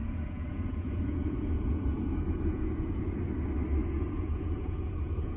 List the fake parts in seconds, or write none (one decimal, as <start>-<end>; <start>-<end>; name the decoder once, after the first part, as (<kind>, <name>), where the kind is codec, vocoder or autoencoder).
0.0-3.2 (vocoder, Vocos); 3.8-5.4